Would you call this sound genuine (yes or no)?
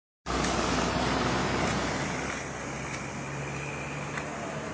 yes